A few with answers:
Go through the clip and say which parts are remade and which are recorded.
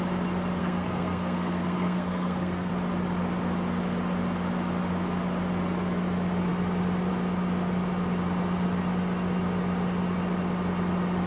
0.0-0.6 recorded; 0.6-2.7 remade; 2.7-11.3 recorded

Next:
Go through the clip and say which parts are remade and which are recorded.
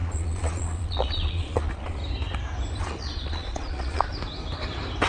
0.0-2.0 remade; 2.0-2.8 recorded; 2.8-4.1 remade; 4.1-5.1 recorded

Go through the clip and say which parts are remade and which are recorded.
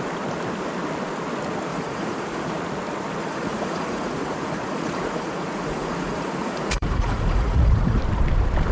0.0-1.7 recorded; 1.7-2.5 remade; 2.5-3.2 recorded; 3.2-8.0 remade; 8.0-8.7 recorded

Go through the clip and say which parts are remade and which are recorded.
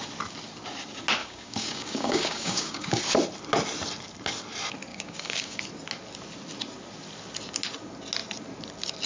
0.0-1.2 recorded; 1.2-3.0 remade; 3.0-4.9 recorded; 4.9-5.6 remade; 5.6-9.1 recorded